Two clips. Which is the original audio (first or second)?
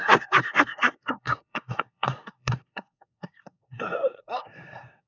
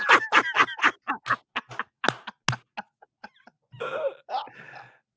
second